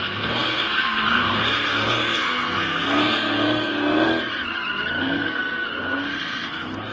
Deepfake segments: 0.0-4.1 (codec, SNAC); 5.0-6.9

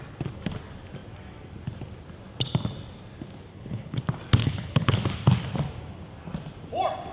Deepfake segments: 3.5-4.0 (codec, HILCodec); 4.4-5.0

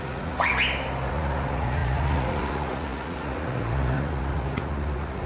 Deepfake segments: 0.0-0.5 (vocoder, Vocos); 1.1-5.3

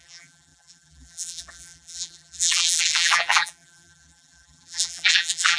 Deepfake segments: 0.0-5.6 (vocoder, BigVGAN v2)